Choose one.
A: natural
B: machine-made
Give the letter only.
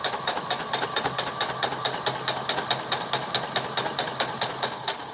A